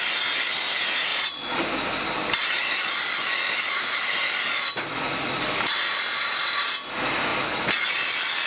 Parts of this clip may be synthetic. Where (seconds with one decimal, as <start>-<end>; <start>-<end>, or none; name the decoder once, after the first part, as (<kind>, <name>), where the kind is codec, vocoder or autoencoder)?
1.1-1.6 (vocoder, Vocos)